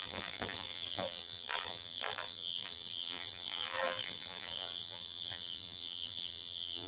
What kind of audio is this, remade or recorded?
remade